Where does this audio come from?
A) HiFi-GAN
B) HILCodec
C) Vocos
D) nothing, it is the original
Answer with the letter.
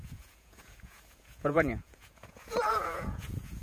C